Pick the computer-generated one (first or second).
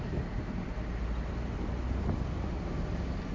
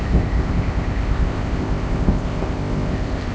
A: second